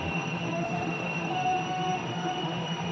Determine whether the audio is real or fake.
fake